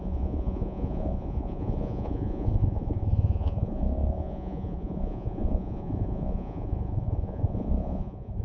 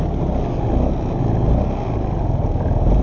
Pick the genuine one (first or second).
second